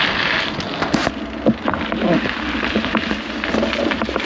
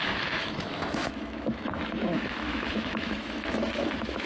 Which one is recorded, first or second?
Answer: first